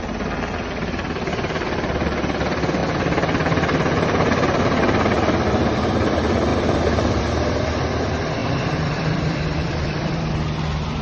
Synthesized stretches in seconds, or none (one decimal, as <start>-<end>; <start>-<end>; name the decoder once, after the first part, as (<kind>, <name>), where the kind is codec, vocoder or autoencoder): 6.5-7.2 (vocoder, BigVGAN v2); 8.4-10.3